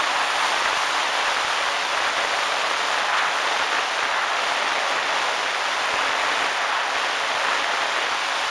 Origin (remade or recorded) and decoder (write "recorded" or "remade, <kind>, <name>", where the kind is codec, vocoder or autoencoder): recorded